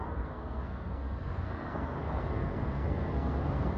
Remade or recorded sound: remade